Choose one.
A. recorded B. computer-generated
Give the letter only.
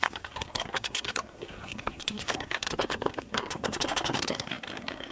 B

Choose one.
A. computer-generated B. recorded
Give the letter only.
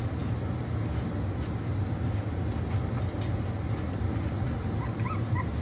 B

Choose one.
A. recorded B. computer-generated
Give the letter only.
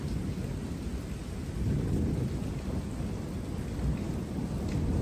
A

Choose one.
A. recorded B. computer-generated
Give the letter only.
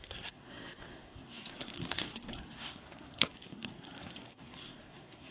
B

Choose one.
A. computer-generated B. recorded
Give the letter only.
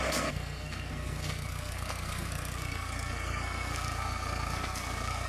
A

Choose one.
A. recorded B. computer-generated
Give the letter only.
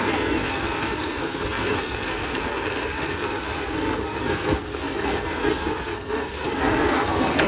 B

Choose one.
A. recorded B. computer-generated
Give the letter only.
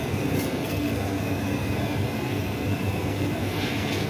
B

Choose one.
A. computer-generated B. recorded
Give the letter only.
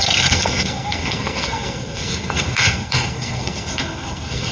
A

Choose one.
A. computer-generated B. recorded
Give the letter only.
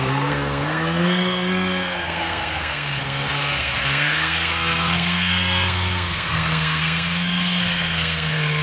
A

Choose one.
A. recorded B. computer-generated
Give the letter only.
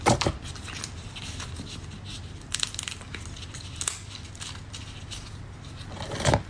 A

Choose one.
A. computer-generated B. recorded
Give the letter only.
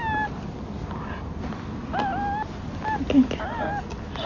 B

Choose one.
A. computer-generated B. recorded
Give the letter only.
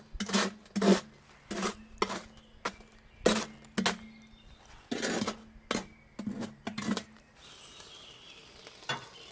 B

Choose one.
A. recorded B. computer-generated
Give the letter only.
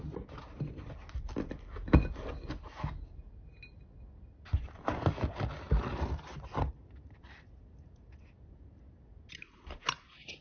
A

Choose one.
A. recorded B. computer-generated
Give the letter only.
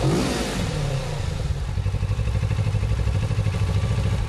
A